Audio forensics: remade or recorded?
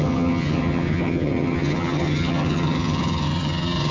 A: remade